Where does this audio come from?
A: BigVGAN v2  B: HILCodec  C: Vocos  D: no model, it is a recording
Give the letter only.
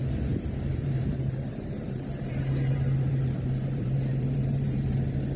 A